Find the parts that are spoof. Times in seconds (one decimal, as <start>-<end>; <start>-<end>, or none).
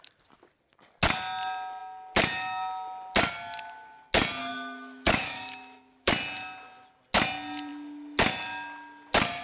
4.4-6.1